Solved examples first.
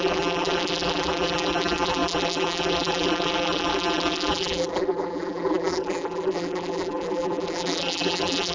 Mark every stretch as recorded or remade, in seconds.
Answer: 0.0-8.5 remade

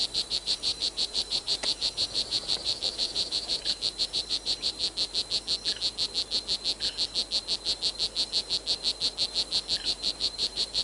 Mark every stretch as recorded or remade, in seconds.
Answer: 0.0-4.8 remade; 4.8-9.8 recorded; 9.8-10.8 remade

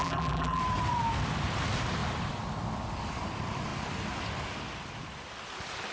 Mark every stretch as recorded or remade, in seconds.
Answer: 0.0-0.6 remade; 0.6-5.9 recorded